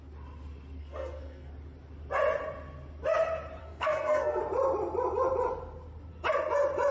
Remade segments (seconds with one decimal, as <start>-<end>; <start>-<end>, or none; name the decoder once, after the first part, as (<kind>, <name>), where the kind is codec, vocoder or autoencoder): 0.8-1.5 (codec, SNAC); 3.6-4.4